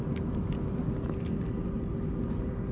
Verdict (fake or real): real